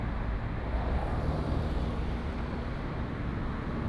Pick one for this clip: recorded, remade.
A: recorded